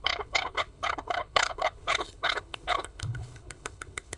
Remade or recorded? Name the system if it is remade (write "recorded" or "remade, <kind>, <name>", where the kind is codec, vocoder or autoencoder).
remade, codec, HILCodec